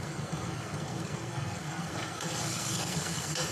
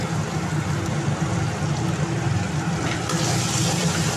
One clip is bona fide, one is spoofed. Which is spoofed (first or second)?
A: first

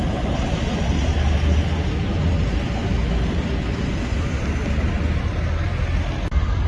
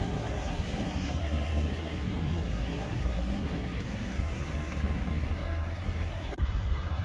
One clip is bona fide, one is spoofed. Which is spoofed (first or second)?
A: second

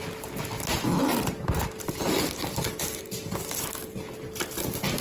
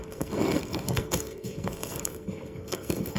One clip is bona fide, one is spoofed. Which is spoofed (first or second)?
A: second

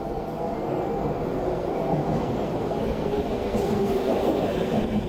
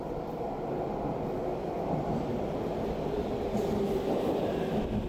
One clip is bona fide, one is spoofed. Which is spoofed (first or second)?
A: first